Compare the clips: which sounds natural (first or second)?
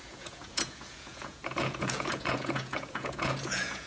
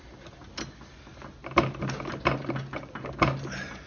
second